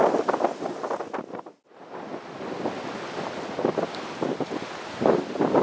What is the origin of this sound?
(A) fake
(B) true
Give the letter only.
B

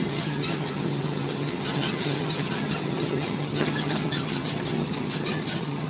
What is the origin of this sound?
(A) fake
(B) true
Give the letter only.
A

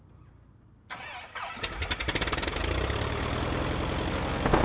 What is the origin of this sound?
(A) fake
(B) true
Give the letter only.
B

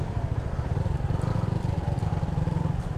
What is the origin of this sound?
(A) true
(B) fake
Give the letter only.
A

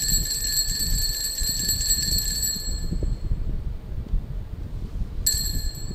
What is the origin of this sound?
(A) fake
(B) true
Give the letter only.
B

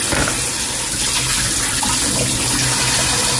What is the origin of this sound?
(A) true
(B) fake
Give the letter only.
A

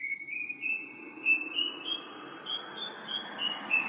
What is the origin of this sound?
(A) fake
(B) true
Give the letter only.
B